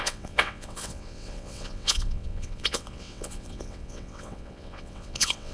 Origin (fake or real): fake